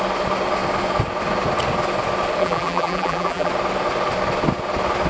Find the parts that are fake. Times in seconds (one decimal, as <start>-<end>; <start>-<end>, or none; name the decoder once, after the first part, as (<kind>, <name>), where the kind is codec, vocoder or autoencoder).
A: 2.4-3.5 (vocoder, BigVGAN v2)